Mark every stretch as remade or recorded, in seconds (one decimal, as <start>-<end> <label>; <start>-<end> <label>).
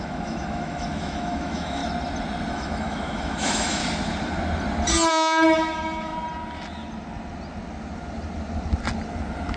0.0-1.8 remade; 1.8-2.5 recorded; 2.5-3.8 remade; 3.8-5.1 recorded; 5.1-6.1 remade; 6.1-9.6 recorded